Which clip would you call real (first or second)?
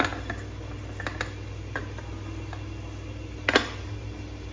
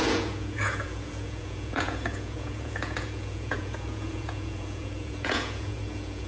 first